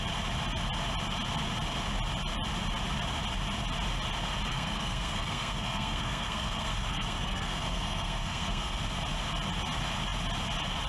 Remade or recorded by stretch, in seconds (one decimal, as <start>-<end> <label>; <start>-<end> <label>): 0.0-4.5 recorded; 4.5-8.8 remade; 8.8-10.9 recorded